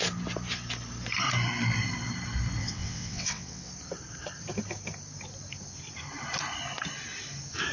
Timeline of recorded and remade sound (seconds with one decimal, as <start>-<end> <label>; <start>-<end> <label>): 0.0-2.6 recorded; 2.6-3.7 remade; 3.7-7.7 recorded